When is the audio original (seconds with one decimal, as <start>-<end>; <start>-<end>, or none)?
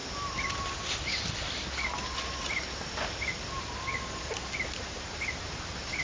0.0-6.0